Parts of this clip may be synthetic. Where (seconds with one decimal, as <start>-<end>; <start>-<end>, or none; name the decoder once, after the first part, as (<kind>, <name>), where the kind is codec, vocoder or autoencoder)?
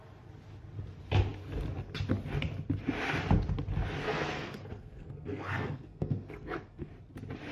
4.0-6.9 (codec, SNAC)